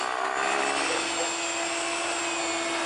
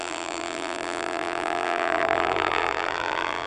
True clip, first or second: first